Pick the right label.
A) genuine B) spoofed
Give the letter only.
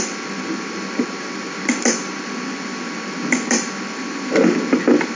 A